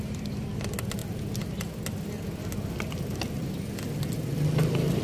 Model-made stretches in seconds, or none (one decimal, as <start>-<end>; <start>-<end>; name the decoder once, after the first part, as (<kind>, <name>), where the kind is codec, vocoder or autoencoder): none